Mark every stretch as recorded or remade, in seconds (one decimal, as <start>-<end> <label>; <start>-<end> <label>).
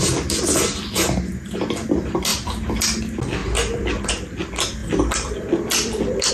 0.0-3.4 recorded; 3.4-4.1 remade; 4.1-4.8 recorded; 4.8-6.3 remade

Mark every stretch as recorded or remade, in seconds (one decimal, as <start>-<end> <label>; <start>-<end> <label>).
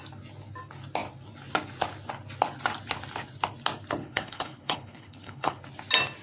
0.0-4.0 recorded; 4.0-5.6 remade; 5.6-6.2 recorded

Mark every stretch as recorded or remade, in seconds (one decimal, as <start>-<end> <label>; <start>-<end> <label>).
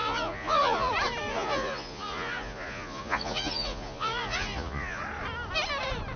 0.0-0.9 remade; 0.9-1.3 recorded; 1.3-5.0 remade; 5.0-6.2 recorded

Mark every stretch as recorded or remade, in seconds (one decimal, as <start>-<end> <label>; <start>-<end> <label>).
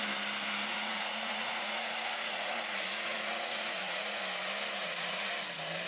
0.0-0.7 recorded; 0.7-4.2 remade; 4.2-4.8 recorded; 4.8-5.3 remade; 5.3-5.9 recorded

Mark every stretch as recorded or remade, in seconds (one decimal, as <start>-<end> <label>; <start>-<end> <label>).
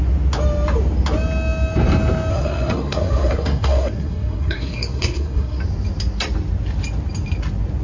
0.0-2.3 recorded; 2.3-5.6 remade; 5.6-7.8 recorded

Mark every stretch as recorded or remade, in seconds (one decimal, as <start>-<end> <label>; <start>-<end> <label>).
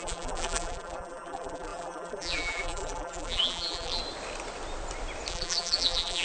0.0-4.0 remade; 4.0-5.3 recorded; 5.3-6.2 remade